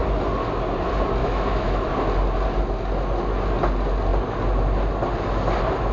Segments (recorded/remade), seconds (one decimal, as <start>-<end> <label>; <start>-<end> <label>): 0.0-1.2 recorded; 1.2-1.9 remade; 1.9-5.9 recorded